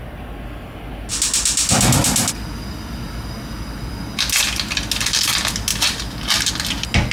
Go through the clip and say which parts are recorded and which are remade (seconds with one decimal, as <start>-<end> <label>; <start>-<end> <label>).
0.0-7.1 recorded